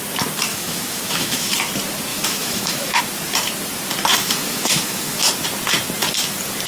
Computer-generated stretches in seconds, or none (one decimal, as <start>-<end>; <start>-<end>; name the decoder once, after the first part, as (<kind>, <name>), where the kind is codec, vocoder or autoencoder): 0.5-1.5 (autoencoder, DAC-VAE); 2.1-3.0; 4.1-5.3